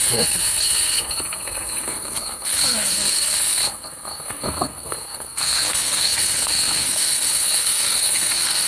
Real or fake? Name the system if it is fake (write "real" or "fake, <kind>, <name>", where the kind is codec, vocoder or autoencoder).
fake, codec, SNAC